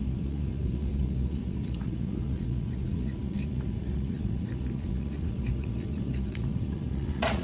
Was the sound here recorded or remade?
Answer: remade